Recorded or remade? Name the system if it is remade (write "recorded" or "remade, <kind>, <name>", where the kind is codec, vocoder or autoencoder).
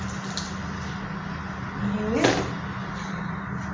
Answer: recorded